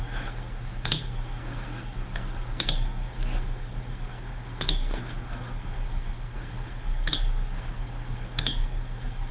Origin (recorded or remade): remade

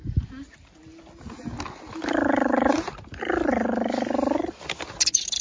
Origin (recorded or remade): recorded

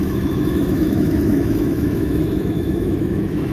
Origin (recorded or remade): remade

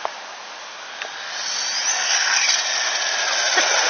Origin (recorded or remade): recorded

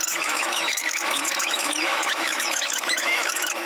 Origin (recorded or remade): remade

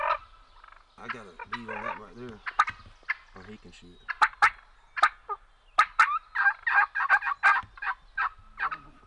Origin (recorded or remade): recorded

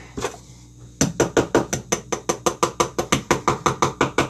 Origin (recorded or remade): recorded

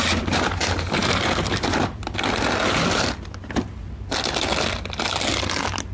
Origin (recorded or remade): recorded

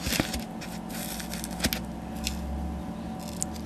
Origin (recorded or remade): recorded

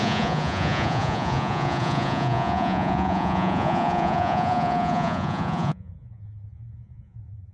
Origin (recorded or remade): remade